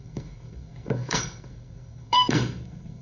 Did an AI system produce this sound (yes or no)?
yes